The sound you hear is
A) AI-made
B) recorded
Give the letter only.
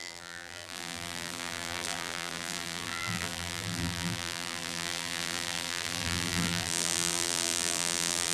A